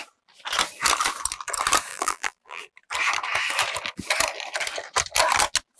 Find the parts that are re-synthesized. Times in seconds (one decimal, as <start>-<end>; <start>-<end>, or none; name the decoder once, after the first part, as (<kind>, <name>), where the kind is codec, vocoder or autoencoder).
1.9-2.6 (vocoder, BigVGAN v2)